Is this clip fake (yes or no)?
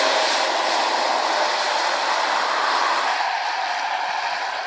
no